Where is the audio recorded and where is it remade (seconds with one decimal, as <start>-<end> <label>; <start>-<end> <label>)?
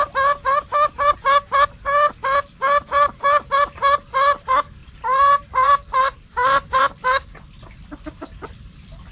0.0-4.8 recorded; 4.8-6.8 remade; 6.8-9.1 recorded